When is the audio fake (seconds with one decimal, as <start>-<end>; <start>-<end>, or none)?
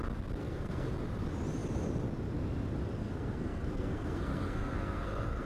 0.4-0.9; 3.0-5.5